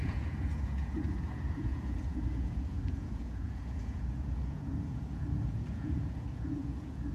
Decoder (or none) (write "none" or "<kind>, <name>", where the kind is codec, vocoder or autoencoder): vocoder, Vocos